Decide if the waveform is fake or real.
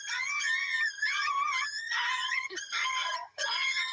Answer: fake